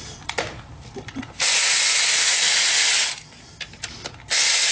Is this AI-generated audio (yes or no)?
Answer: no